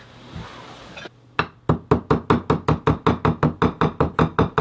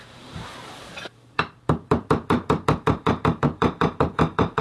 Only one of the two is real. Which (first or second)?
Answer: first